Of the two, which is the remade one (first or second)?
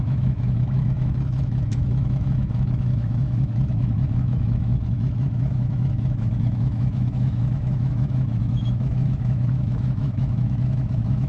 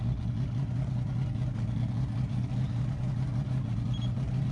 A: first